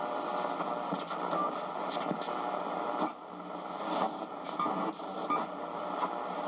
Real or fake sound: real